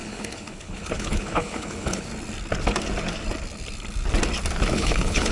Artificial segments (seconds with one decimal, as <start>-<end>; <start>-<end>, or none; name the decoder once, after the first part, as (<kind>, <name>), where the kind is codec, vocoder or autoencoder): 0.0-2.1 (codec, HILCodec); 4.7-5.3